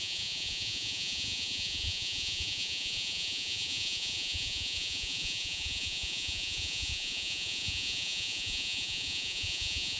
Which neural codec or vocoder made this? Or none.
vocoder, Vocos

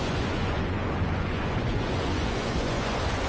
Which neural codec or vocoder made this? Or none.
vocoder, Vocos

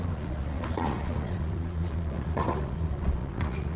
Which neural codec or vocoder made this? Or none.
vocoder, Vocos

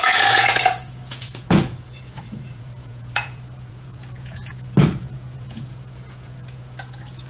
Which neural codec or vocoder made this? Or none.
vocoder, Vocos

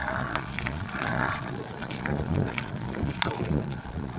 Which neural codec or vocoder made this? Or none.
vocoder, Vocos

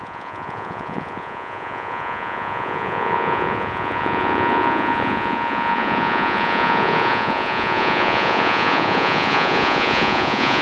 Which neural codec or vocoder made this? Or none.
vocoder, Vocos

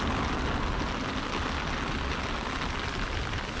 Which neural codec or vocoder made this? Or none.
none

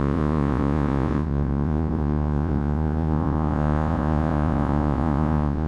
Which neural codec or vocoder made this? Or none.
vocoder, Vocos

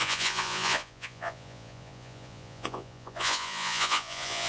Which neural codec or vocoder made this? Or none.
vocoder, Vocos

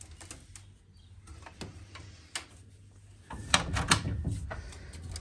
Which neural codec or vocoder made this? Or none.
none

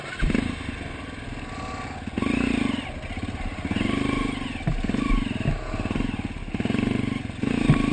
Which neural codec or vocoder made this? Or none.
none